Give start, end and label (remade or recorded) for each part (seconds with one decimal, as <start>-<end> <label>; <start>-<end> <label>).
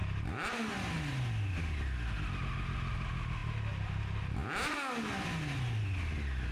0.0-6.5 recorded